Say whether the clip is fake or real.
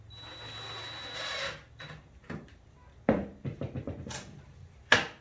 real